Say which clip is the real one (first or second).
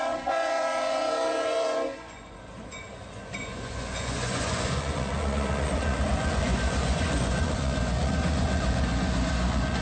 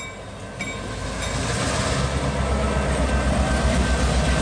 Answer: second